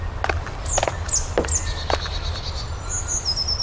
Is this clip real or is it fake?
real